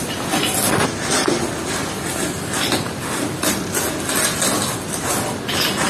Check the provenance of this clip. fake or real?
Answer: real